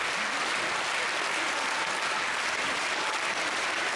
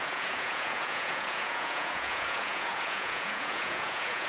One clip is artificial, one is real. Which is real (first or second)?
first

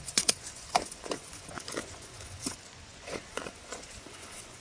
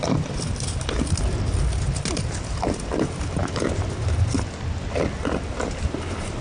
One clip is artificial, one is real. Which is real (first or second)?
second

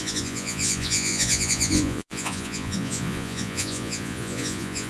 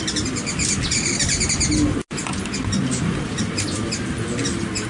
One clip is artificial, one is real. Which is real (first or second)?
second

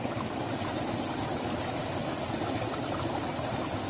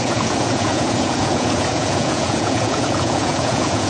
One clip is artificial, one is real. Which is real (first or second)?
first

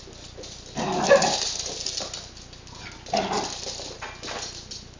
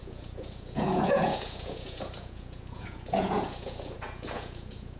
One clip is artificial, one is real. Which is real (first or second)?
first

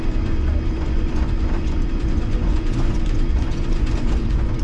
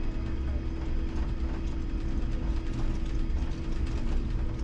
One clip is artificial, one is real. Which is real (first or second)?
second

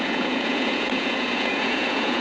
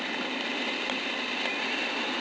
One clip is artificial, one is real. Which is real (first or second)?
second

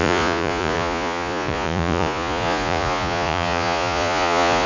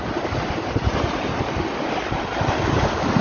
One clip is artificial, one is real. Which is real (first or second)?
second